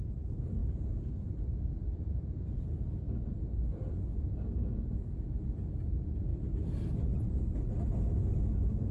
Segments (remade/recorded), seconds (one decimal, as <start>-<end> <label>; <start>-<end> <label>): 0.0-0.6 recorded; 0.6-2.8 remade; 2.8-8.9 recorded